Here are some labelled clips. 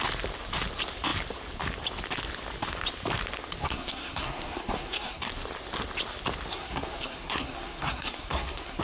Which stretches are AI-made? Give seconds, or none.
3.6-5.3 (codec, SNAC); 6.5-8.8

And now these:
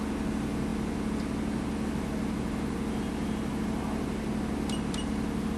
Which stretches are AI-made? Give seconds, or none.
none